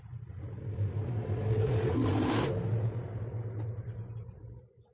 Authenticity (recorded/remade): recorded